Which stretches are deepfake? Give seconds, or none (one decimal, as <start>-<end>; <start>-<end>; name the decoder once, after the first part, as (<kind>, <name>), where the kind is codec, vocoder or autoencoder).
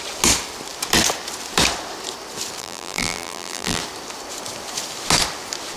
2.6-3.8 (vocoder, BigVGAN v2)